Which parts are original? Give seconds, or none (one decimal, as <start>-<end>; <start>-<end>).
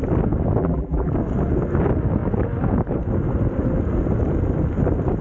0.0-0.6; 1.1-5.2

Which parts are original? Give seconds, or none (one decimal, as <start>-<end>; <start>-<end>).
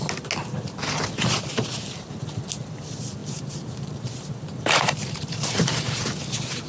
0.0-3.2; 5.3-6.7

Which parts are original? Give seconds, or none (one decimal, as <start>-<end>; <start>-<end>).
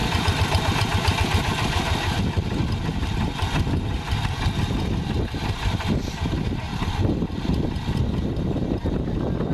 2.6-4.8; 6.7-8.3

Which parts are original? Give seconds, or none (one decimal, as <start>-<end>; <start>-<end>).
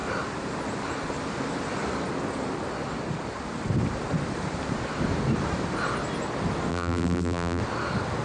0.0-6.7; 7.6-8.2